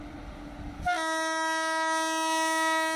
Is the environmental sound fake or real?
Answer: real